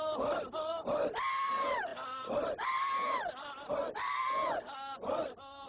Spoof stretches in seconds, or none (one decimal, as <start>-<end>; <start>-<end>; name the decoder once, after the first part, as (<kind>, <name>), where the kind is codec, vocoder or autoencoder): none